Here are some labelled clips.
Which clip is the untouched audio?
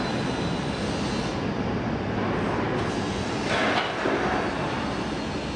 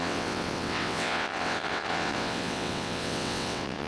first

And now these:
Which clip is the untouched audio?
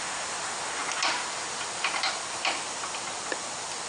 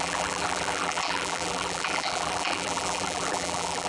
first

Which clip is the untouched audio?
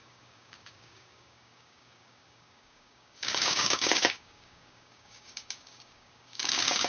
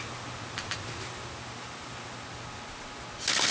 second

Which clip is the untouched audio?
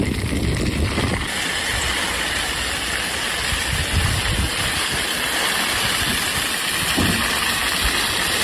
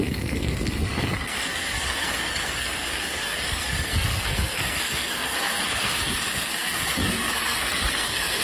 first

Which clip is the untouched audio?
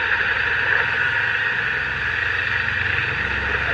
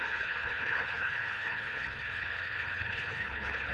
first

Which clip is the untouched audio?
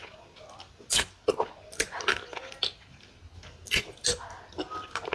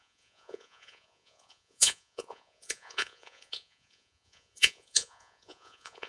first